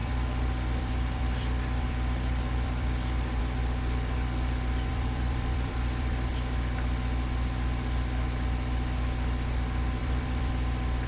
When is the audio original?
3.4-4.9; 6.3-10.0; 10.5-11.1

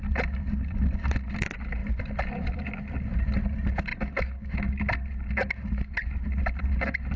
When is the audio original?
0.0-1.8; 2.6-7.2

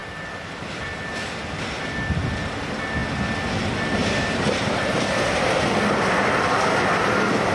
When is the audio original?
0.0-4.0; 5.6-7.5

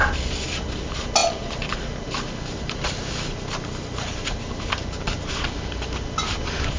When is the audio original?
0.0-6.8